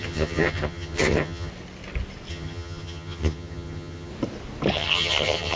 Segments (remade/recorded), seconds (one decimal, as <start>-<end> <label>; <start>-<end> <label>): 0.0-1.5 remade; 1.5-2.3 recorded; 2.3-4.1 remade; 4.1-4.7 recorded; 4.7-5.6 remade